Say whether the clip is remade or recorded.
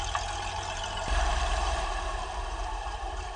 remade